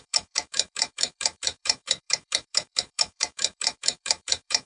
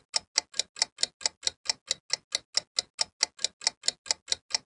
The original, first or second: second